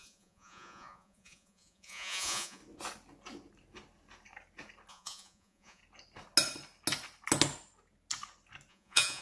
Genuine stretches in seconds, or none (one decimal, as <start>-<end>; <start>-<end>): 2.6-4.9; 5.8-8.7